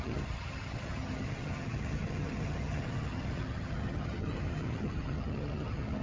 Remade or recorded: remade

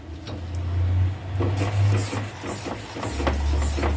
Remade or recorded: recorded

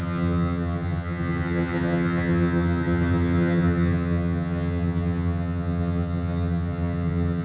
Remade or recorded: remade